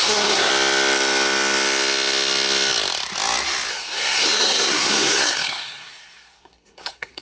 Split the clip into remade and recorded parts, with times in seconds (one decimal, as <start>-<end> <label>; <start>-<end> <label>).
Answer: 0.0-0.5 remade; 0.5-3.7 recorded; 3.7-7.2 remade